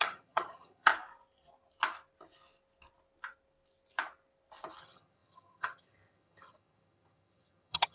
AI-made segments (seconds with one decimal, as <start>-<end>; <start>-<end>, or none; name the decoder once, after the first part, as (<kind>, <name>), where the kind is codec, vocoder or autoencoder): 0.0-0.9 (vocoder, HiFi-GAN); 4.8-7.9